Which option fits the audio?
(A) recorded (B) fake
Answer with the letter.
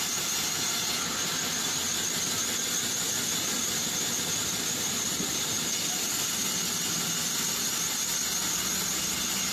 A